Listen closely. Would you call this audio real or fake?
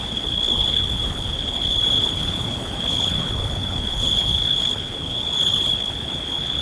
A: fake